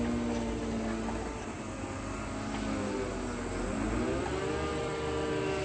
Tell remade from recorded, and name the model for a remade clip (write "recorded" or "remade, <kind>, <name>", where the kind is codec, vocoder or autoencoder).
recorded